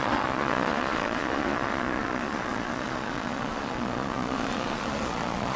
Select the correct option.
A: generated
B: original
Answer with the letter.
A